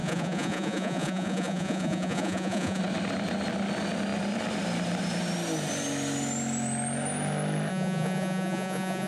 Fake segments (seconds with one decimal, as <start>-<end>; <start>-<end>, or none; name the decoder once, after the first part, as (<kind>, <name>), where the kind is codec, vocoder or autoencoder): 0.0-2.8 (vocoder, Vocos); 7.7-9.1